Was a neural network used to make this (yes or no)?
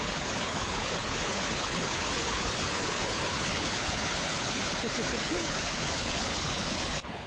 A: yes